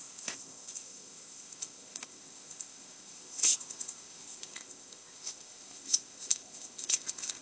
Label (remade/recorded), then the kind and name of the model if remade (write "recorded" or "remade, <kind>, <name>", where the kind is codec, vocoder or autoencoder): remade, codec, ZipCodec